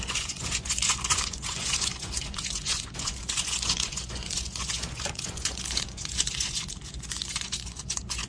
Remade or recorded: remade